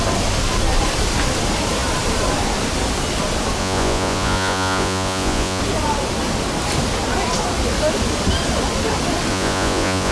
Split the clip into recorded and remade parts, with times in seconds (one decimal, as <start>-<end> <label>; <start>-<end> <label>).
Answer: 0.0-3.6 recorded; 3.6-5.6 remade; 5.6-9.3 recorded; 9.3-10.1 remade